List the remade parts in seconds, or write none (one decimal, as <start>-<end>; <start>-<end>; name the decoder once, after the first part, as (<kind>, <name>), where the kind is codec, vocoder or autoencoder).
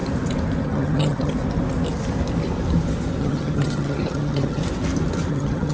0.6-1.3 (vocoder, HiFi-GAN); 3.2-4.6; 5.3-5.7